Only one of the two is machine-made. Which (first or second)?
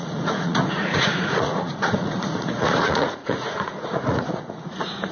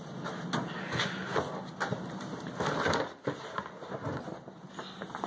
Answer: first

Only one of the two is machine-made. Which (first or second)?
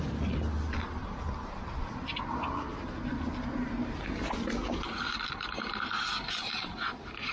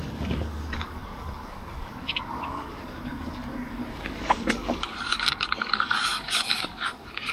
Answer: second